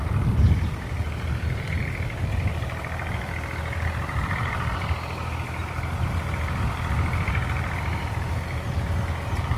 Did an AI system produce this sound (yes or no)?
no